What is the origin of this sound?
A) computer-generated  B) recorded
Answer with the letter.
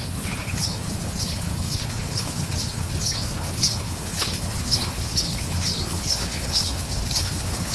A